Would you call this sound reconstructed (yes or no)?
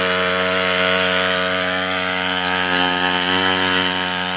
no